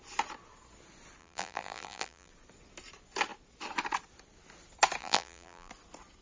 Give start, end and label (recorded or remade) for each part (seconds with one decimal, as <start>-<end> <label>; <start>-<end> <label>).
0.0-1.2 recorded; 1.2-2.3 remade; 2.3-5.0 recorded; 5.0-5.7 remade; 5.7-6.2 recorded